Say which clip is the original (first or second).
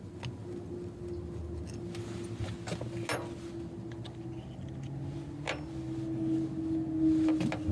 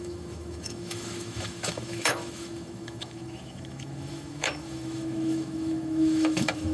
first